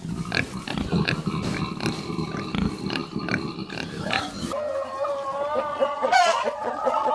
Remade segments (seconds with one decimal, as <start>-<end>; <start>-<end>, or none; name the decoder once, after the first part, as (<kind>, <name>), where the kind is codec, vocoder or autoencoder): 5.7-7.1 (vocoder, Vocos)